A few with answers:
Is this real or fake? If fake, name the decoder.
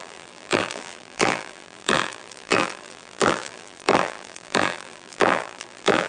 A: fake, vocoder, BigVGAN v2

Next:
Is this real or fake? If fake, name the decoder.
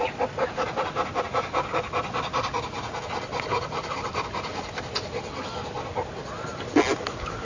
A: real